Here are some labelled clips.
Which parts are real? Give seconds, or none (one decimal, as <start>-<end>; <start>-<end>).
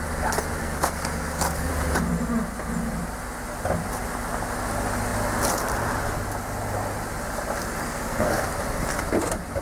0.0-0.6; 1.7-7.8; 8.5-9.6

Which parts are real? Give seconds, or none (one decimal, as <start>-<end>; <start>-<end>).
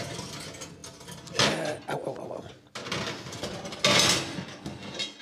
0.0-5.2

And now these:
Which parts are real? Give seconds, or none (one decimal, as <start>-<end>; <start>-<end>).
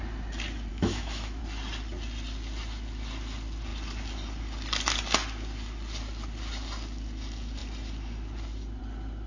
0.0-0.7; 1.4-9.3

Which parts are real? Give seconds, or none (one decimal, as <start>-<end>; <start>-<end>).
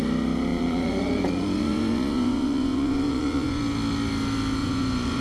0.0-0.5; 3.6-4.6